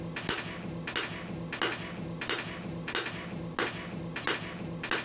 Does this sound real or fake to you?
real